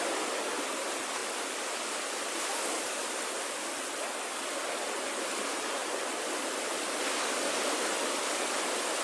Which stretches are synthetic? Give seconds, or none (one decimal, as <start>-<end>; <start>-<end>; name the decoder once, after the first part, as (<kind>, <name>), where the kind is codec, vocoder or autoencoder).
1.2-2.1 (vocoder, BigVGAN v2); 5.8-6.6